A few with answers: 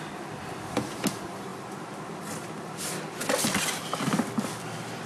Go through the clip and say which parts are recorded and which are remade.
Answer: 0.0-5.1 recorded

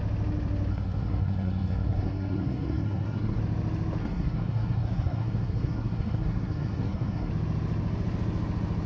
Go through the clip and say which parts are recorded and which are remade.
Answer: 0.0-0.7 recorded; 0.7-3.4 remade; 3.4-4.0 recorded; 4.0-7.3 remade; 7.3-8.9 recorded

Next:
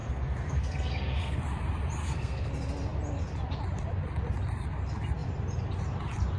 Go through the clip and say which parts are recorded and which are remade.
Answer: 0.0-1.4 remade; 1.4-2.0 recorded; 2.0-2.5 remade; 2.5-6.4 recorded

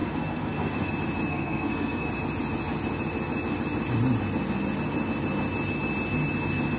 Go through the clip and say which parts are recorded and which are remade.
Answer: 0.0-0.9 remade; 0.9-1.3 recorded; 1.3-2.1 remade; 2.1-6.8 recorded

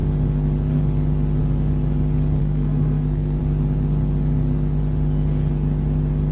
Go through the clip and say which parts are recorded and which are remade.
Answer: 0.0-2.4 recorded; 2.4-3.4 remade; 3.4-6.3 recorded

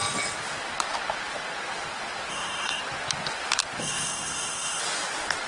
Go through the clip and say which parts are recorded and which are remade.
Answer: 0.0-2.3 recorded; 2.3-2.8 remade; 2.8-3.8 recorded; 3.8-4.8 remade; 4.8-5.5 recorded

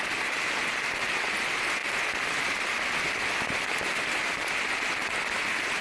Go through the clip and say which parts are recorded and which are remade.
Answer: 0.0-5.8 recorded